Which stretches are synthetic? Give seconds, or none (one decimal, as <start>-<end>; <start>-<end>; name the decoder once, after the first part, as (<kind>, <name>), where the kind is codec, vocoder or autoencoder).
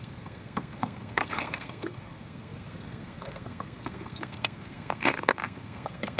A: 0.0-6.2 (codec, SNAC)